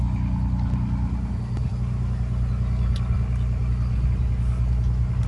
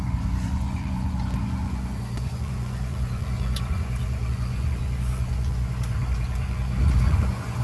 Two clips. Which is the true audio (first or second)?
first